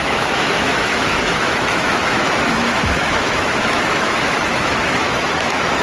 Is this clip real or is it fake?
fake